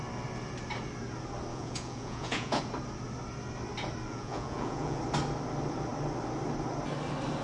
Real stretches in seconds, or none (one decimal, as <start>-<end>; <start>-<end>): 0.0-1.5; 2.6-4.1; 5.0-7.4

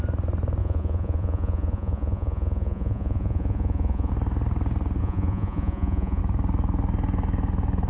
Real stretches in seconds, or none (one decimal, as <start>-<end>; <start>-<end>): 0.0-0.6; 4.1-5.0; 6.2-7.9

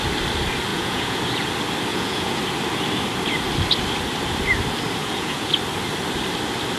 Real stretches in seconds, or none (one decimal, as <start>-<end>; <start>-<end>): 0.0-0.7; 1.2-1.9; 2.4-5.0; 5.5-6.8

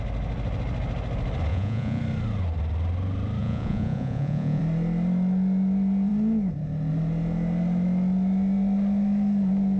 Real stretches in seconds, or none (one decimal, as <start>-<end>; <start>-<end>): 0.0-1.5; 2.0-3.4; 4.6-9.8

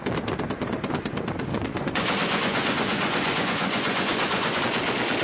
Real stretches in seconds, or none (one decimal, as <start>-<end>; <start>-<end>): 0.0-1.5; 4.6-5.2

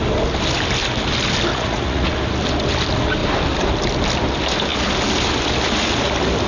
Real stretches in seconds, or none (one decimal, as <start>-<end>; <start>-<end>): 0.0-1.5; 2.1-6.5